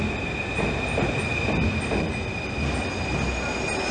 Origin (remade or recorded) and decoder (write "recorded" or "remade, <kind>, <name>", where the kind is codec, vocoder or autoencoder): recorded